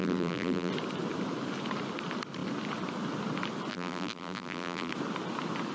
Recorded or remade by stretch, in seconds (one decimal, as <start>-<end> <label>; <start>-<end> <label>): 0.0-0.7 remade; 0.7-3.7 recorded; 3.7-4.9 remade; 4.9-5.7 recorded